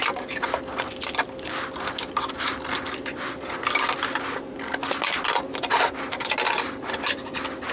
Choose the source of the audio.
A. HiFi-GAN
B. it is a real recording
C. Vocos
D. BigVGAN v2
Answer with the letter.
B